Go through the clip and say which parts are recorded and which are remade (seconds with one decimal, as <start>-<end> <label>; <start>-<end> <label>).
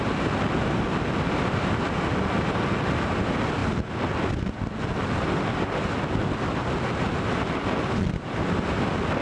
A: 0.0-9.2 recorded